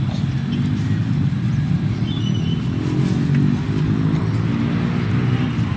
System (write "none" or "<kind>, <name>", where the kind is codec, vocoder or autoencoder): none